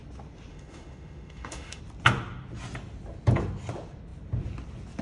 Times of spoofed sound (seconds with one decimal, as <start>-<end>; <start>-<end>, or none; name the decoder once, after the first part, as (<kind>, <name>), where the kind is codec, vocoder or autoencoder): 0.5-1.8 (autoencoder, DAC-VAE)